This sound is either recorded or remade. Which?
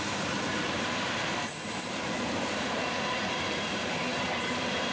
remade